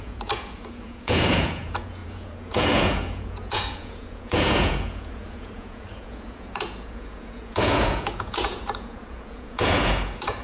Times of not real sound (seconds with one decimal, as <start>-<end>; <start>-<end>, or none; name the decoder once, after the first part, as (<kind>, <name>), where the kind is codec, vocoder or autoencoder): 0.0-10.4 (vocoder, Vocos)